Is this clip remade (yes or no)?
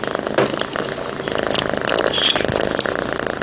no